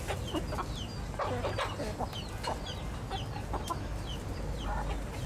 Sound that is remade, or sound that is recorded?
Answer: recorded